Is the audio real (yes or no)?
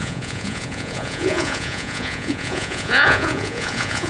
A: no